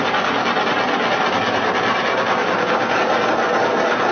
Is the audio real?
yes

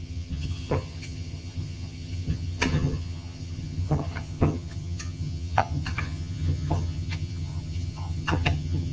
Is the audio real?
no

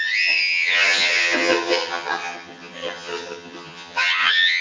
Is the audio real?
no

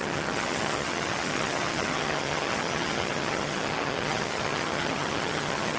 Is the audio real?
no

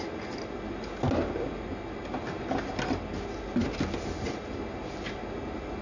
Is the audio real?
yes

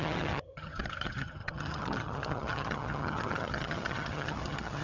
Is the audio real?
no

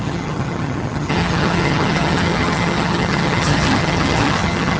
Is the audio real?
no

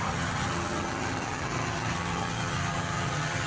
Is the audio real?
no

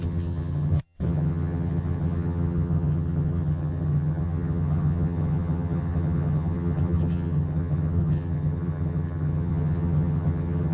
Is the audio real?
no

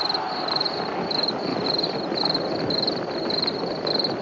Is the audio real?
yes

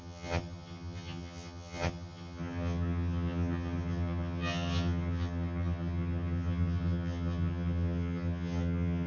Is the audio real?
no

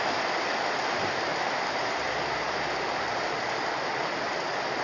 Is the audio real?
yes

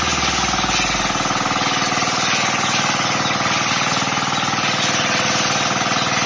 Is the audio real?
yes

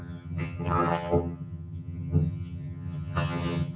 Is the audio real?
no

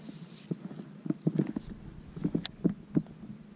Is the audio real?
yes